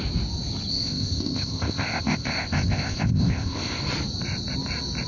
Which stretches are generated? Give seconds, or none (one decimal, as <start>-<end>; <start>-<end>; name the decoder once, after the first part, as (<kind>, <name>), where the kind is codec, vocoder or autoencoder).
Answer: 0.7-3.8 (codec, ZipCodec)